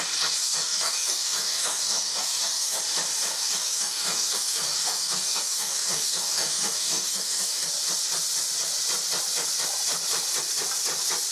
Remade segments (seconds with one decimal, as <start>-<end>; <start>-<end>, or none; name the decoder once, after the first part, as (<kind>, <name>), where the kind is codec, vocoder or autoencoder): 0.4-2.8 (codec, DAC); 3.3-7.7